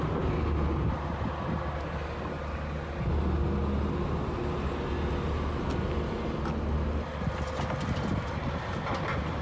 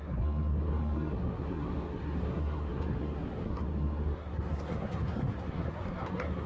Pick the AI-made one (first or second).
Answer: second